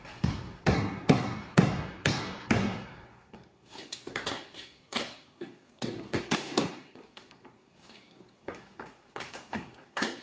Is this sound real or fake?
fake